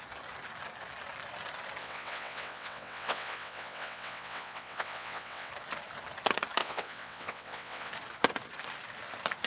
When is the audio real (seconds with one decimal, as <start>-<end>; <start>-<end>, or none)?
0.0-1.8; 5.5-6.6; 7.9-9.5

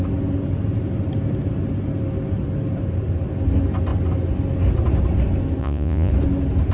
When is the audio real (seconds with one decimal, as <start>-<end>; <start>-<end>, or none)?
0.0-5.6; 6.1-6.7

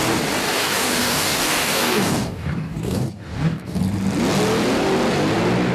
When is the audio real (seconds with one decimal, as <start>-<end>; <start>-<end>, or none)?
0.0-0.4; 3.8-5.7

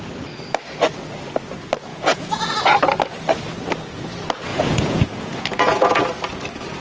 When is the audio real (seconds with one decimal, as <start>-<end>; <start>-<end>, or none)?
0.0-1.9; 2.5-4.5; 6.0-6.8